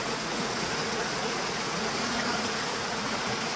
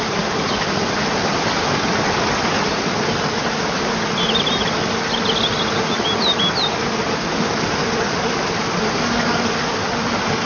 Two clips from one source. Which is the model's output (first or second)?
first